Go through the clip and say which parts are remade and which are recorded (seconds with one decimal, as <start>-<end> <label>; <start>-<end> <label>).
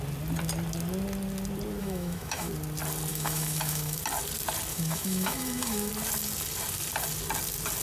0.0-1.8 recorded; 1.8-2.5 remade; 2.5-3.1 recorded; 3.1-4.0 remade; 4.0-4.7 recorded; 4.7-5.9 remade; 5.9-7.8 recorded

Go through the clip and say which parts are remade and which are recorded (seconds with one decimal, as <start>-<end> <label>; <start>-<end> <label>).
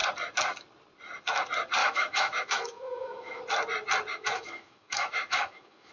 0.0-1.8 recorded; 1.8-3.4 remade; 3.4-4.1 recorded; 4.1-5.9 remade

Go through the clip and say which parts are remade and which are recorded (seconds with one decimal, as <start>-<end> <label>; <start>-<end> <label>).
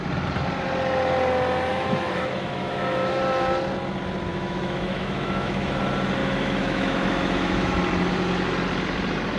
0.0-1.7 recorded; 1.7-3.2 remade; 3.2-4.3 recorded; 4.3-5.8 remade; 5.8-6.2 recorded; 6.2-7.8 remade; 7.8-9.4 recorded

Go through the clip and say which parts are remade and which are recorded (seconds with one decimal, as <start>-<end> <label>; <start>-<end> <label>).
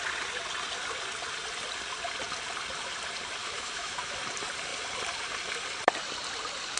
0.0-3.4 recorded; 3.4-4.1 remade; 4.1-6.8 recorded